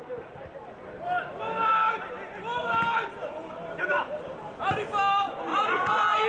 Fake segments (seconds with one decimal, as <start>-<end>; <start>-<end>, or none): 5.5-6.3